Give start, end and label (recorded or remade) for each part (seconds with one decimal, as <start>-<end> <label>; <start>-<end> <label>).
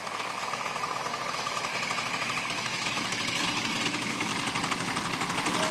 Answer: 0.0-4.3 remade; 4.3-5.7 recorded